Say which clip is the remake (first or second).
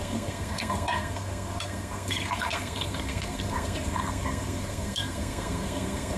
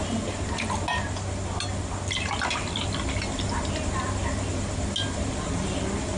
first